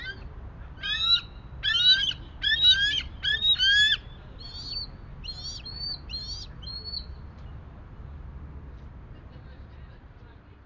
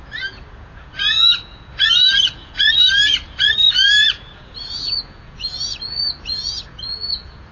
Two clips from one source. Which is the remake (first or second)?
second